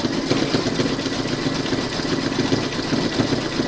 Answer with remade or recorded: recorded